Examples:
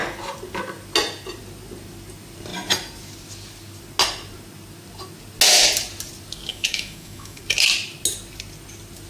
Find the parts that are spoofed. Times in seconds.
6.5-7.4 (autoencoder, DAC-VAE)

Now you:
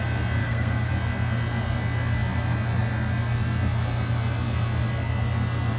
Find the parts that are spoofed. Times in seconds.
0.4-0.9 (codec, SNAC)

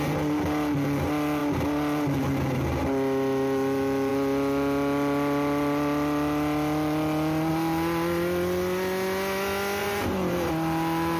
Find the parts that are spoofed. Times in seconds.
9.8-10.5 (vocoder, BigVGAN v2)

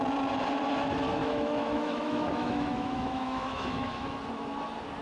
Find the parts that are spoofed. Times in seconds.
1.2-4.2 (autoencoder, DAC-VAE)

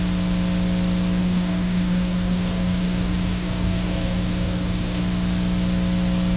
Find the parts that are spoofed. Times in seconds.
1.2-5.0 (codec, DAC)

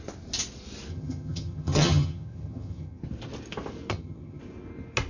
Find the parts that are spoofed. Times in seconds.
0.9-3.0 (vocoder, HiFi-GAN); 3.9-4.4

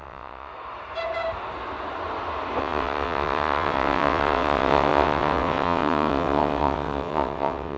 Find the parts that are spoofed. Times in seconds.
0.0-0.5 (vocoder, WaveNeXt); 2.6-7.8